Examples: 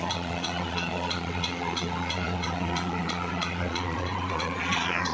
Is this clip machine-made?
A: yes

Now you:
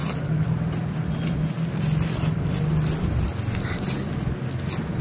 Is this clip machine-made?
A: no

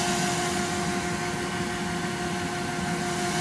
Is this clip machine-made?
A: no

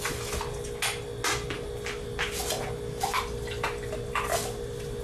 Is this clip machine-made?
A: no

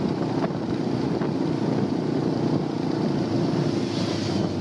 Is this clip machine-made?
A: no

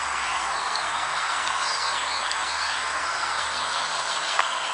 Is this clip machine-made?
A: yes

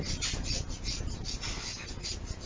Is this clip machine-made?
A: no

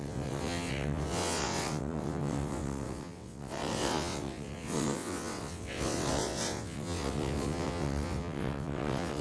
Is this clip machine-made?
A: yes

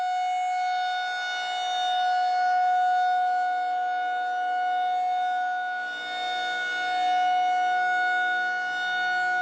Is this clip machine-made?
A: no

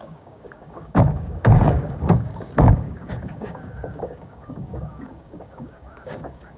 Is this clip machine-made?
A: yes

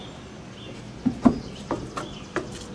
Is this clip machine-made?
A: no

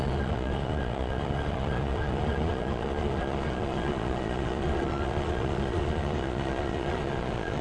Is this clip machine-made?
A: yes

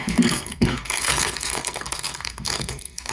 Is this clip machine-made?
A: yes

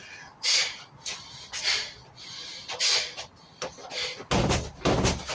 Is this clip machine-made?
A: no